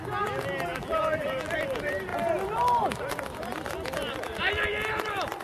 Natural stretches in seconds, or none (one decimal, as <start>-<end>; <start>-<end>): 0.0-0.7; 1.5-5.4